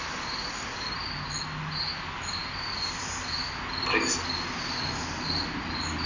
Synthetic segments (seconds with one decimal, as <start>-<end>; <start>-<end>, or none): none